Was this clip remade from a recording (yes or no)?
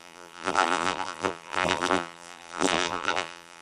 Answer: yes